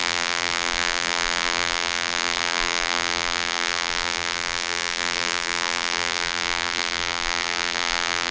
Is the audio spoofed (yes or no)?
yes